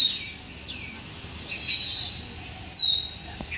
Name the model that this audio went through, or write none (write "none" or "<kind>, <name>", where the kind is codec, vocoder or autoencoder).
none